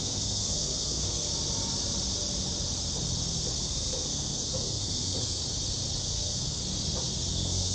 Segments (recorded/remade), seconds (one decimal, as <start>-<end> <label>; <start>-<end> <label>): 0.0-1.3 remade; 1.3-3.6 recorded; 3.6-5.4 remade; 5.4-6.0 recorded; 6.0-6.6 remade; 6.6-7.3 recorded; 7.3-7.7 remade